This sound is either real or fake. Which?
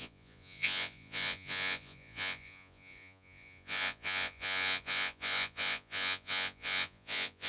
fake